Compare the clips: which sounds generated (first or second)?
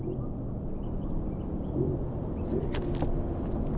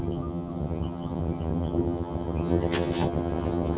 second